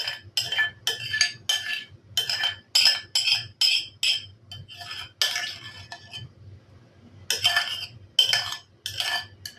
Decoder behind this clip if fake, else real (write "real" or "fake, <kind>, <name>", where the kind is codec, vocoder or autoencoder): real